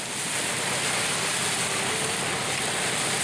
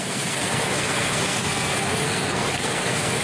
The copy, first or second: second